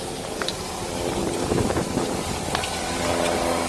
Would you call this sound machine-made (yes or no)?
no